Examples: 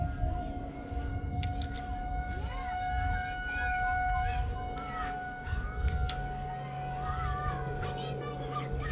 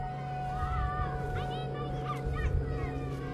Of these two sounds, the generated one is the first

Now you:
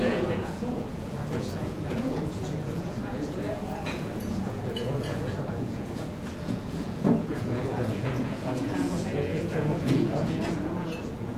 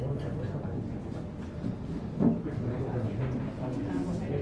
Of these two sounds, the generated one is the first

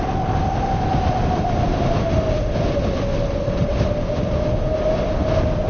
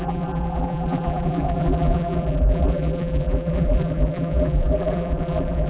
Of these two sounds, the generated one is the second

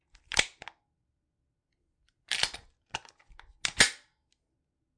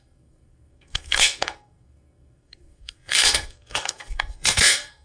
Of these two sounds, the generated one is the second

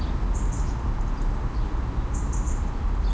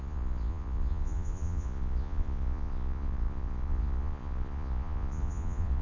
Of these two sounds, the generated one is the second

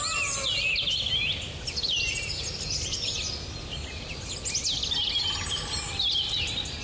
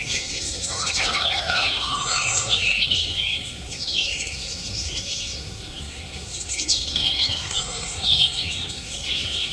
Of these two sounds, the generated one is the second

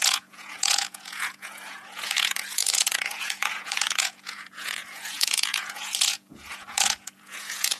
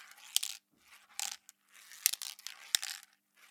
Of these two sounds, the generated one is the first